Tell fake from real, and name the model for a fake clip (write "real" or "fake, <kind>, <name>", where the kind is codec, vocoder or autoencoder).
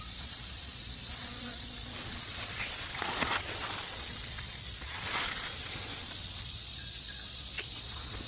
fake, vocoder, Vocos